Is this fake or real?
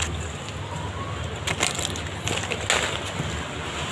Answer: real